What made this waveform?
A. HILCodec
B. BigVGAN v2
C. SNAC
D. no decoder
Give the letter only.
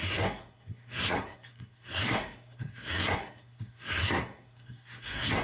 C